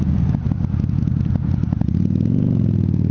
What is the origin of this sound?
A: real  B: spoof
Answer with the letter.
A